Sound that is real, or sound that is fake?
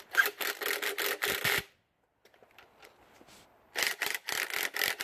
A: real